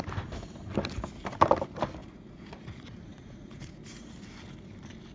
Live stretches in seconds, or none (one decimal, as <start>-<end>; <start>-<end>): 0.0-2.0; 2.7-3.1; 4.1-5.1

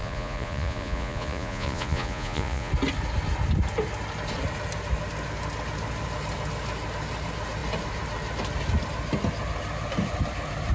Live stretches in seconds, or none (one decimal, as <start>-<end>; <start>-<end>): 2.7-10.7

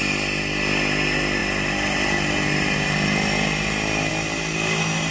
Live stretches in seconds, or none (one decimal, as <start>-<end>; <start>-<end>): 0.0-5.1

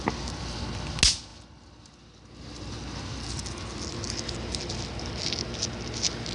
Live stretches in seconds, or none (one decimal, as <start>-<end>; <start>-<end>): 0.0-6.3